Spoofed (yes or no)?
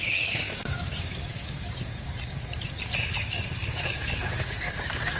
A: yes